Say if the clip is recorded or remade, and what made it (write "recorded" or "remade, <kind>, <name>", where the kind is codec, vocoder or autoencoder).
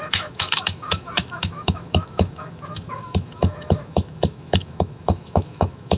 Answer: remade, autoencoder, DAC-VAE